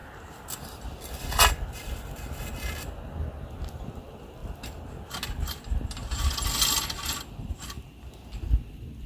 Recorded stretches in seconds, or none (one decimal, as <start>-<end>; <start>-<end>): 0.0-9.1